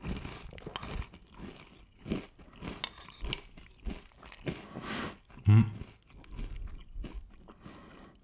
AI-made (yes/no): no